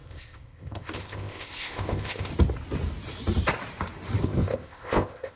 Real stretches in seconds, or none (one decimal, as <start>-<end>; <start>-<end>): 2.3-4.2